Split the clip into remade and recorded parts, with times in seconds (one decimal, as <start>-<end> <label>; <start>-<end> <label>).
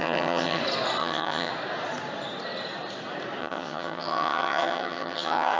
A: 0.0-0.6 remade; 0.6-1.0 recorded; 1.0-1.5 remade; 1.5-3.4 recorded; 3.4-5.6 remade